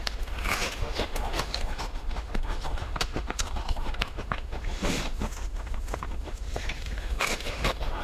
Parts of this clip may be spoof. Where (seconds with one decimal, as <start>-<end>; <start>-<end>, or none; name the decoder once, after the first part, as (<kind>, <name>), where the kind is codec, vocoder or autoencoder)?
0.0-8.0 (autoencoder, DAC-VAE)

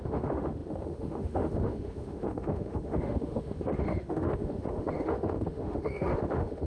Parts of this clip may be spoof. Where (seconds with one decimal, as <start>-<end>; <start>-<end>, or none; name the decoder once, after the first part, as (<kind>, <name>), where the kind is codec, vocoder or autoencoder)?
0.0-6.7 (autoencoder, DAC-VAE)

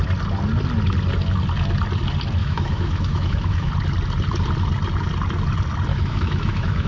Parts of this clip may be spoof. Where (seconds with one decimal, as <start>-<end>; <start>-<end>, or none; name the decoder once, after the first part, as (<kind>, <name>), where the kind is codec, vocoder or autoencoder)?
2.4-3.7 (autoencoder, DAC-VAE); 5.9-6.9

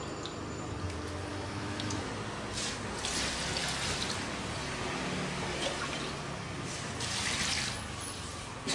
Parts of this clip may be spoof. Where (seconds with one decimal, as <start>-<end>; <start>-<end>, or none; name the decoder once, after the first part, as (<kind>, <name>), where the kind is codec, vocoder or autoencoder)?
1.3-2.1 (autoencoder, DAC-VAE)

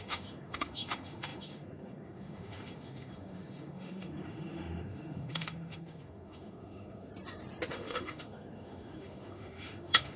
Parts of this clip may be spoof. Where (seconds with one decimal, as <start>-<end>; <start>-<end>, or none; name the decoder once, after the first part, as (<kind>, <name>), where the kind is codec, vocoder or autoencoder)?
0.0-7.1 (autoencoder, DAC-VAE); 7.7-10.2